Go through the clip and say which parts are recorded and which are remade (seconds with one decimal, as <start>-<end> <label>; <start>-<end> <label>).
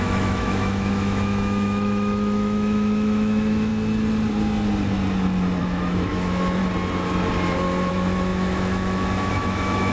0.0-3.7 remade; 3.7-5.6 recorded; 5.6-6.6 remade; 6.6-7.9 recorded; 7.9-9.9 remade